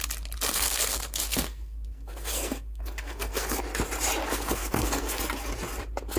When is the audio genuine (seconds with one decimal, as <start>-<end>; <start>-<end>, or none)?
0.0-0.5; 3.6-4.2; 5.2-6.2

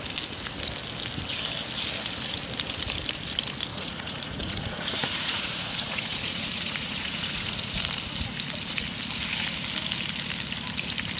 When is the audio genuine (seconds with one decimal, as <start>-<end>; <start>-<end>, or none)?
0.0-3.7; 7.8-11.2

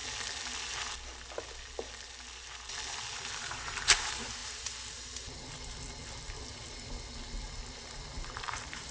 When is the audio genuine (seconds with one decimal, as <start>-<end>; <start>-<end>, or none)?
0.0-3.4; 4.4-8.4

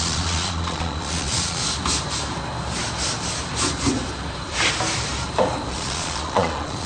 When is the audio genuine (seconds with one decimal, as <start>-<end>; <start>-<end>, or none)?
1.6-5.7

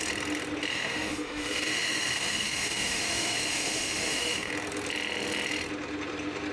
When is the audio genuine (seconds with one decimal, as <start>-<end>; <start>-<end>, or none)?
0.0-0.7; 4.5-6.5

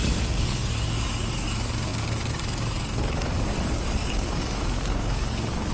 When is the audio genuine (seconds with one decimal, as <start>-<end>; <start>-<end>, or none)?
none